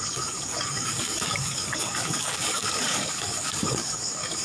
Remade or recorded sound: remade